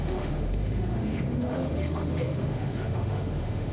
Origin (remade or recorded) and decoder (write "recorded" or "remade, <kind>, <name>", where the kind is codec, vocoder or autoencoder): remade, autoencoder, DAC-VAE